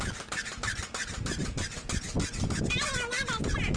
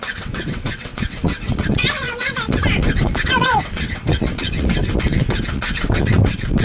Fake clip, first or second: second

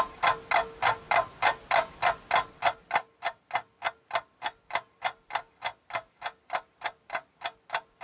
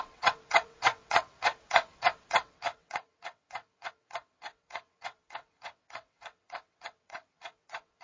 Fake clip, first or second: second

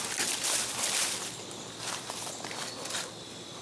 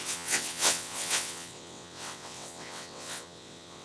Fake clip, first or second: second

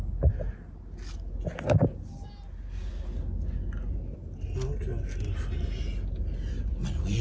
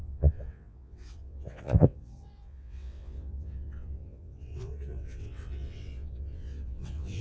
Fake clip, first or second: second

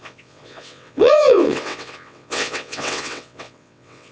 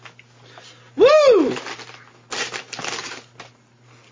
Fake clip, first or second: first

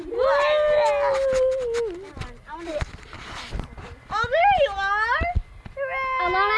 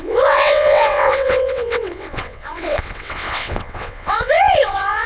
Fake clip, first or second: second